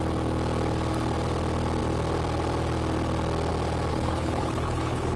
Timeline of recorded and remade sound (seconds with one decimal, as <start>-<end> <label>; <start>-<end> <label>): 0.0-3.9 recorded; 3.9-5.2 remade